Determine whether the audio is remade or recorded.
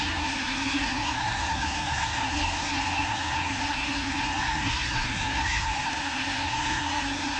remade